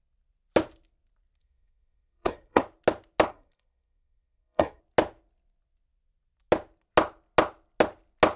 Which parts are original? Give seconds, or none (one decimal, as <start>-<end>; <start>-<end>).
0.0-1.4; 2.6-3.3; 4.8-8.4